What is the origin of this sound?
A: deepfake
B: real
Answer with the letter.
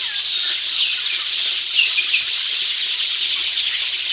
B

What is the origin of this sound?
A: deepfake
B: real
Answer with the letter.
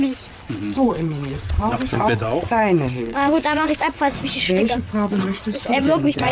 A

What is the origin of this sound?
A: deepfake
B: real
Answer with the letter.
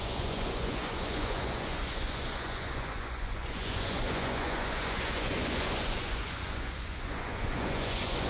A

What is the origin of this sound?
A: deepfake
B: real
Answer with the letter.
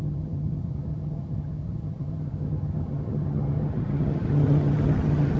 A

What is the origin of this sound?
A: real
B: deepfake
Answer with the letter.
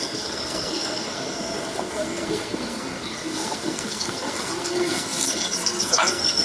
B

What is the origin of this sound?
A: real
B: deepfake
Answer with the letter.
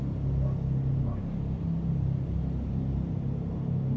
A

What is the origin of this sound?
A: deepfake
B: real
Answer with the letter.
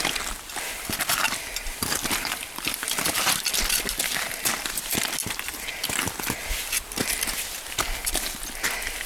B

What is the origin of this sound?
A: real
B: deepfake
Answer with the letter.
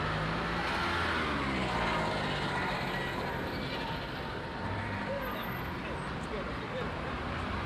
A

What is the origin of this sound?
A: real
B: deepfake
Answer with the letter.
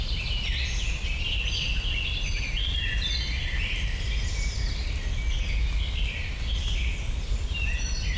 A